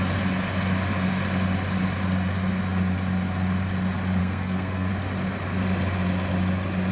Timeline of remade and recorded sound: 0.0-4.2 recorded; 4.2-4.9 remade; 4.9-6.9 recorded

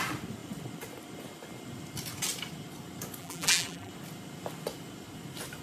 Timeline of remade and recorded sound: 0.0-3.2 recorded; 3.2-3.9 remade; 3.9-5.6 recorded